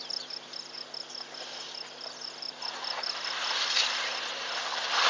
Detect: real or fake real